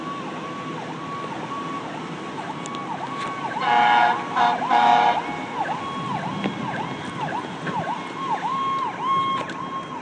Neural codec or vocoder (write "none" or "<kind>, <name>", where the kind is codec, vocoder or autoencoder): none